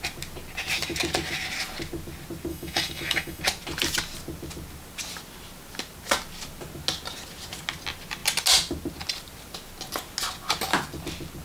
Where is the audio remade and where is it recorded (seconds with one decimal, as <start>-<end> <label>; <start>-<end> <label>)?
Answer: 0.0-2.5 recorded; 2.5-3.4 remade; 3.4-11.4 recorded